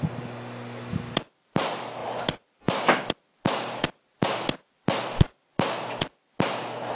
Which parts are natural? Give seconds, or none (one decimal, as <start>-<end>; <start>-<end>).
0.0-7.0